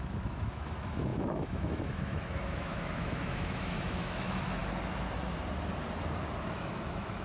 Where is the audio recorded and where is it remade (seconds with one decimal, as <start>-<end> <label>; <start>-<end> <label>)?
0.0-4.6 remade; 4.6-6.5 recorded; 6.5-7.2 remade